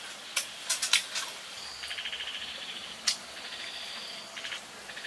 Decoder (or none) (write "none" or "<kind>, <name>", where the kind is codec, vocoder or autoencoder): none